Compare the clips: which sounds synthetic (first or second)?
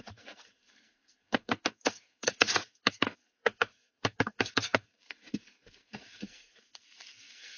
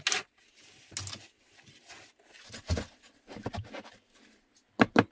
first